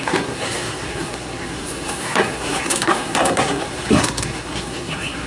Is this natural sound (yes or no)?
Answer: no